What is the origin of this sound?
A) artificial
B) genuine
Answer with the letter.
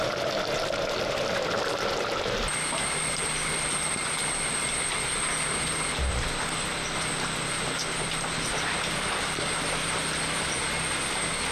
B